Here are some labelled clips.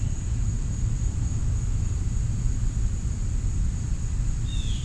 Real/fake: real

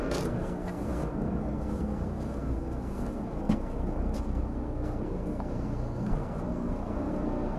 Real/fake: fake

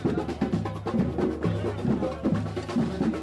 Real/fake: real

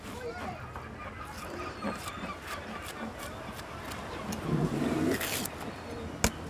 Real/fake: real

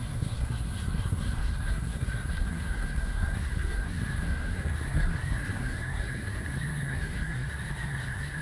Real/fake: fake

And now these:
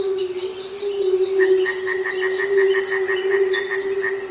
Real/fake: real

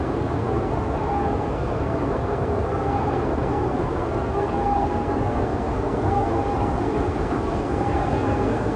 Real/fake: fake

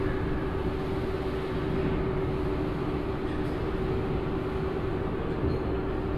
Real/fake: real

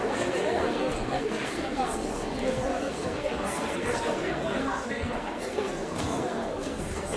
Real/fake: fake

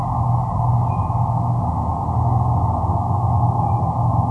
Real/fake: real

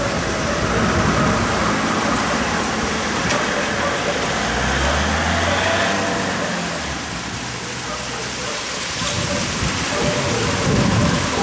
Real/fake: real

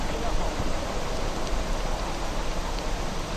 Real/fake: real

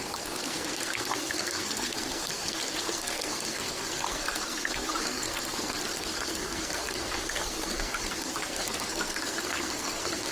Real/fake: fake